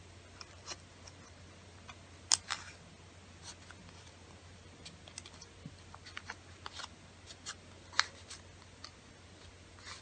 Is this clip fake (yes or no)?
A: no